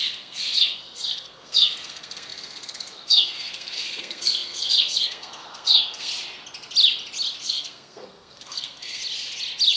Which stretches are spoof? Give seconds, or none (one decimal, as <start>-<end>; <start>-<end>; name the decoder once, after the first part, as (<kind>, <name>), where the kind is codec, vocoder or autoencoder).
0.0-6.1 (codec, SNAC); 7.4-9.0